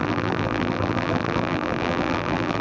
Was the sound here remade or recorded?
remade